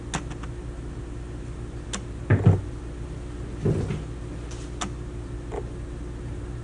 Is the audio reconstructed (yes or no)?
no